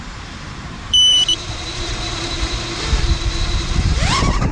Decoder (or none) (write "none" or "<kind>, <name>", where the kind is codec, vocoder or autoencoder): vocoder, BigVGAN v2